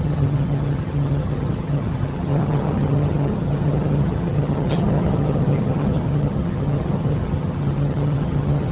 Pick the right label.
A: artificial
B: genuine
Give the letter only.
A